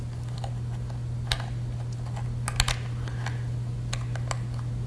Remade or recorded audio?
recorded